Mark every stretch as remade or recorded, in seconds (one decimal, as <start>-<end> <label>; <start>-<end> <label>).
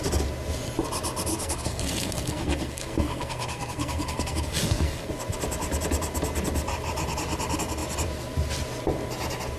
0.0-1.3 recorded; 1.3-5.1 remade; 5.1-9.6 recorded